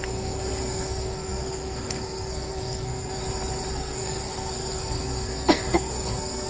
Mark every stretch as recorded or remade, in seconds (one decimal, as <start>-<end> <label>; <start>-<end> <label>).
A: 0.0-3.2 remade; 3.2-3.7 recorded; 3.7-6.5 remade

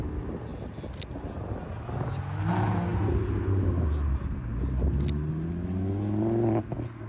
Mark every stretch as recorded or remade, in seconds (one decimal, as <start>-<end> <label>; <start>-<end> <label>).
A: 0.0-7.1 recorded

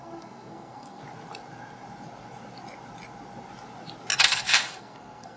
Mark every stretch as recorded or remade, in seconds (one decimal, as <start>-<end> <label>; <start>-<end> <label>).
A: 0.0-1.0 remade; 1.0-4.2 recorded; 4.2-5.4 remade

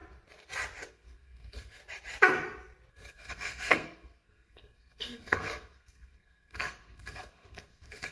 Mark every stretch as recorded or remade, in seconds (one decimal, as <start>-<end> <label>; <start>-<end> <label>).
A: 0.0-0.9 recorded; 0.9-1.8 remade; 1.8-2.9 recorded; 2.9-8.1 remade